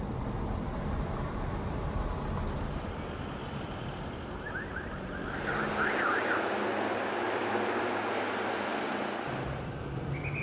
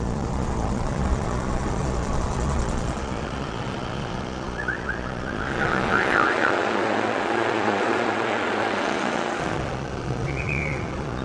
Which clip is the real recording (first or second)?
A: first